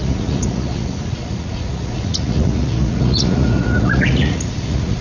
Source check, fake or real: fake